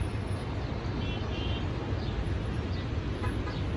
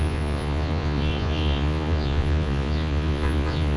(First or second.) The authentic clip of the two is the first